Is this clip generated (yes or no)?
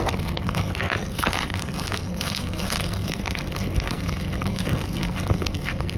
yes